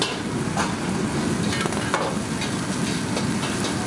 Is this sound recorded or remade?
recorded